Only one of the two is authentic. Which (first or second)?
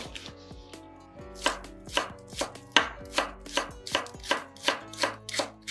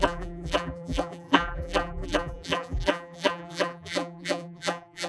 first